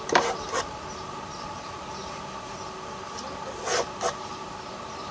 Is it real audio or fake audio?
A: real